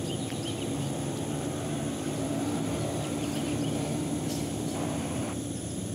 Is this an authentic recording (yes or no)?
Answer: no